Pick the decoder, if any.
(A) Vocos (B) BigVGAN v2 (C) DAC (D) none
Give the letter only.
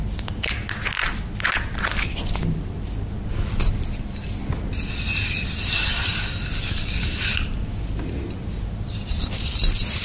D